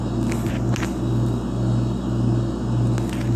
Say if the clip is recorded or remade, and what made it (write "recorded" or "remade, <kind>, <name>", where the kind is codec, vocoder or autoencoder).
recorded